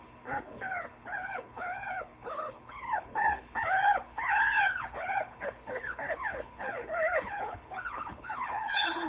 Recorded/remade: remade